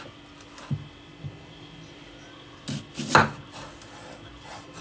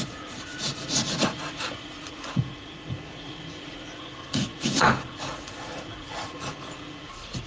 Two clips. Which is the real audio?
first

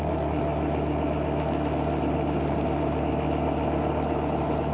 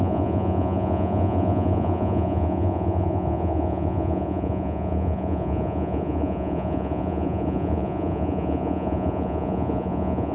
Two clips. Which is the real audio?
first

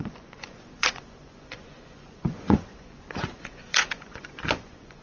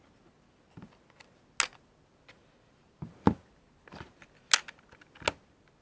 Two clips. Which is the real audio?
second